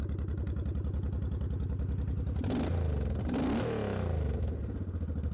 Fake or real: real